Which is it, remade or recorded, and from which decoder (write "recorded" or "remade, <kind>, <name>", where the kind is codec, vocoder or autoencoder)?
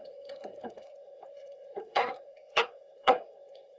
remade, codec, SNAC